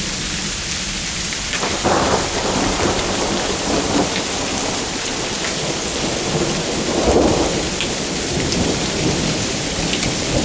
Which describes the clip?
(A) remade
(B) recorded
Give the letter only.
B